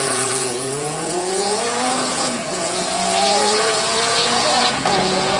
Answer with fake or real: fake